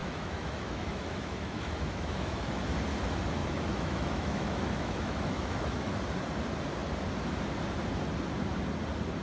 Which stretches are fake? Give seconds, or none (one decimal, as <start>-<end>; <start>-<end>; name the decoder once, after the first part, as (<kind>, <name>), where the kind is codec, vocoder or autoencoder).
0.0-2.6 (autoencoder, DAC-VAE); 3.4-6.0